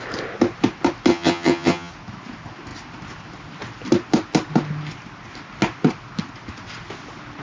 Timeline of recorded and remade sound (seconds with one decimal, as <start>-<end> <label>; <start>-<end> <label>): 0.0-1.1 recorded; 1.1-1.9 remade; 1.9-7.4 recorded